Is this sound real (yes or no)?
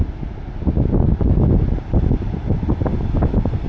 yes